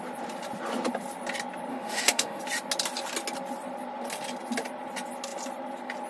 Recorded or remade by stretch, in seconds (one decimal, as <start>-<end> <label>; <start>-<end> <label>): 0.0-1.7 recorded; 1.7-2.4 remade; 2.4-6.1 recorded